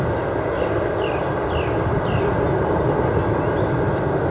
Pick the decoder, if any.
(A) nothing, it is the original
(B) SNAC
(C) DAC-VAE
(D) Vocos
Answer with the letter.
A